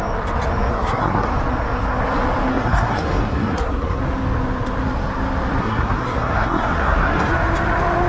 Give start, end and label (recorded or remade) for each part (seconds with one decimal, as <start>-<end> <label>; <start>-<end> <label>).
0.0-0.7 recorded; 0.7-1.3 remade; 1.3-2.5 recorded; 2.5-4.0 remade; 4.0-5.6 recorded; 5.6-7.3 remade; 7.3-8.1 recorded